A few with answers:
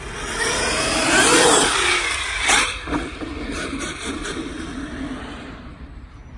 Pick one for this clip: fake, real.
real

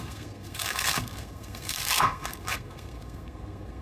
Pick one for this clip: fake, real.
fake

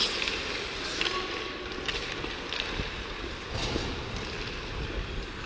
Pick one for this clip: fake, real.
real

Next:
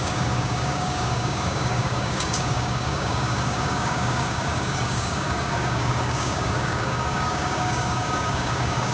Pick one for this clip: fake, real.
fake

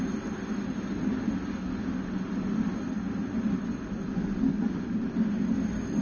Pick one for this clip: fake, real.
real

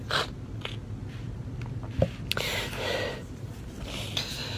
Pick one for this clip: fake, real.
real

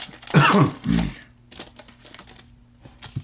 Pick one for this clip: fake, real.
real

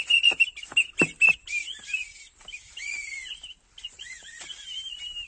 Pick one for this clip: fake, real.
real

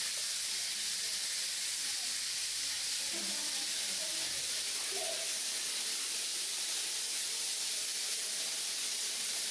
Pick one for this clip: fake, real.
real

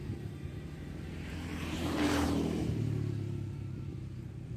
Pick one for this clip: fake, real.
fake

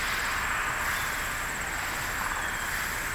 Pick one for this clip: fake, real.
real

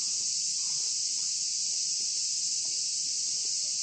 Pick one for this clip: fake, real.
fake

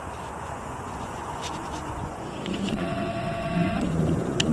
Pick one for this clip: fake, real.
fake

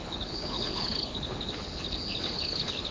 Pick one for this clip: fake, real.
fake